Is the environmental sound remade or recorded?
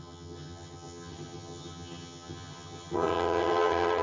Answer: remade